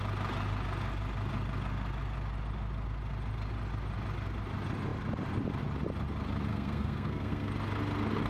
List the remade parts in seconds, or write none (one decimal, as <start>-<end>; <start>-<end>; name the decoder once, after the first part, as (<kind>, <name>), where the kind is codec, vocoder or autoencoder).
6.5-7.5 (codec, SNAC)